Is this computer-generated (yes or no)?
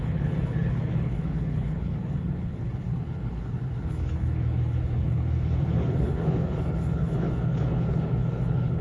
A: yes